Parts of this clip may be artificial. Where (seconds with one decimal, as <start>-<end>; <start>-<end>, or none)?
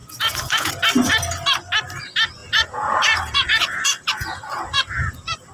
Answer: 0.0-0.7; 2.4-5.5